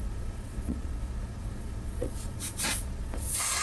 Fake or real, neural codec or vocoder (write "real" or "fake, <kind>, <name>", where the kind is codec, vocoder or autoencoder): fake, vocoder, Vocos